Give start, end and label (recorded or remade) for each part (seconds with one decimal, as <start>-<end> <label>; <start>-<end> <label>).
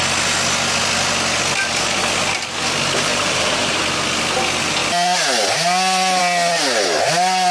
0.0-3.1 recorded; 3.1-3.8 remade; 3.8-7.5 recorded